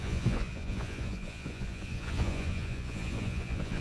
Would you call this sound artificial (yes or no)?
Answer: yes